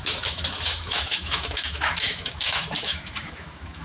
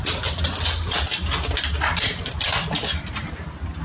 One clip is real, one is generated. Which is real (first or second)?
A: second